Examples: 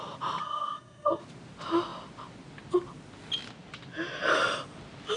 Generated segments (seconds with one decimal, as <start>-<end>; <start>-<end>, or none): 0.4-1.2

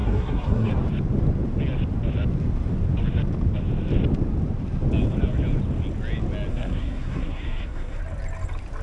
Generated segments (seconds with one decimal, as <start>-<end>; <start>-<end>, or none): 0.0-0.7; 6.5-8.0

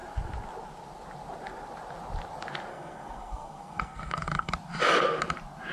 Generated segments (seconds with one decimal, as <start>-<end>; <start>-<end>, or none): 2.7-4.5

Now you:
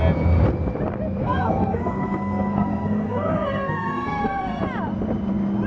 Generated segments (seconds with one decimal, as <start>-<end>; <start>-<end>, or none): 1.2-4.6